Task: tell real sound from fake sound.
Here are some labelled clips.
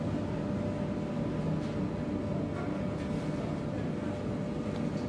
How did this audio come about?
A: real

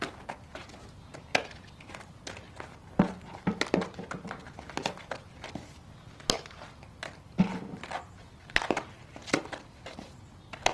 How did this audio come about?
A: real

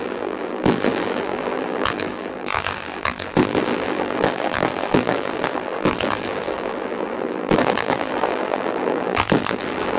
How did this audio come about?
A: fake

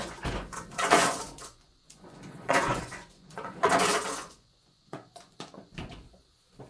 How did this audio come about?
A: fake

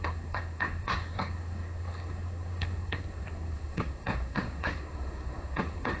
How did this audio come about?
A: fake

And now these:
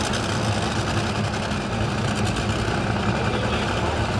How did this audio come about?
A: real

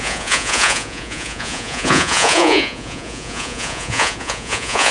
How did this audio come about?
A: fake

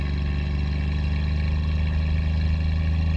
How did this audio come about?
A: real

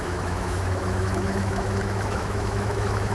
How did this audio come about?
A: fake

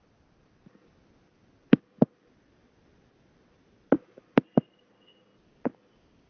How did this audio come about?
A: real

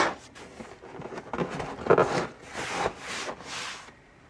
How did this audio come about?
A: real